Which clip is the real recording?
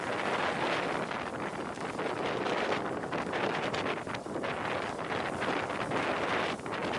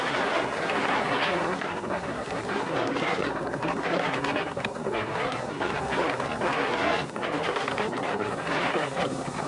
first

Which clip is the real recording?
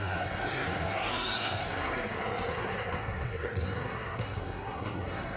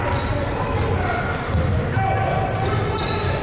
second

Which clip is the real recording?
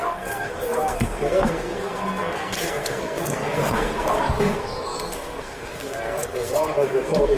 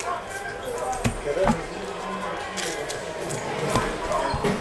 second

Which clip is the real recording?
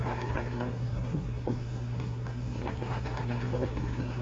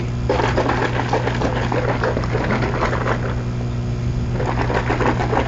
second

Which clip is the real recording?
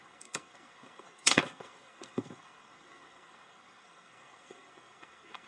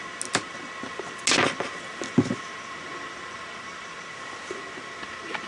second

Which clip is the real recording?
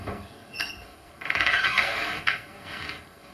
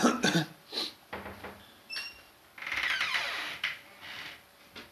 second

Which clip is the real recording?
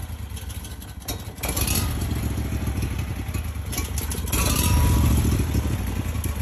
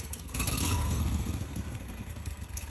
first